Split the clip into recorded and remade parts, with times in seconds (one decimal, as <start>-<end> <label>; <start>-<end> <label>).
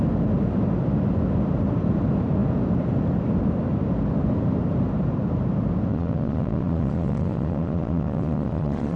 0.0-5.9 recorded; 5.9-9.0 remade